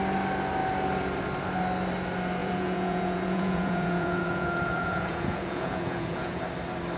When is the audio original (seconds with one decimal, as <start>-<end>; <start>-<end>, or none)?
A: 0.0-2.4; 6.4-7.0